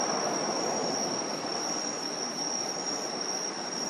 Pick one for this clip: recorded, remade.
recorded